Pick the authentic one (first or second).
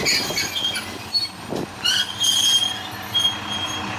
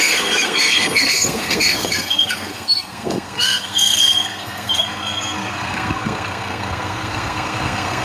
first